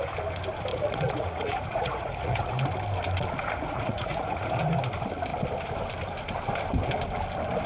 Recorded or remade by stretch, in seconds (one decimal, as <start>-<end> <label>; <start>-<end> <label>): 0.0-0.7 recorded; 0.7-2.5 remade; 2.5-3.4 recorded; 3.4-4.8 remade; 4.8-7.7 recorded